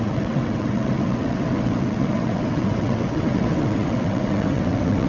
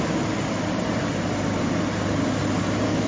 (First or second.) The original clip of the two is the second